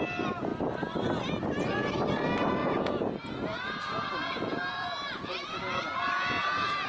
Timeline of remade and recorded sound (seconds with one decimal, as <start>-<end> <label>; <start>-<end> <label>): 0.0-2.6 recorded; 2.6-6.9 remade